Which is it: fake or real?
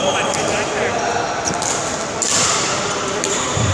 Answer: real